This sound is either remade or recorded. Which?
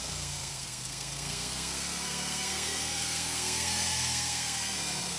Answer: remade